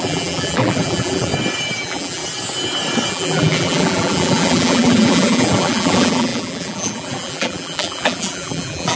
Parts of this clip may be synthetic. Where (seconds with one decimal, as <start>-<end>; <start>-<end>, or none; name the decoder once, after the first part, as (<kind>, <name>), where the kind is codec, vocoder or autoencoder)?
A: 0.0-1.3 (vocoder, BigVGAN v2); 1.8-2.2; 3.1-9.0